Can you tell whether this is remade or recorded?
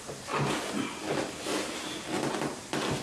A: recorded